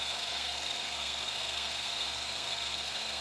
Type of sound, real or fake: fake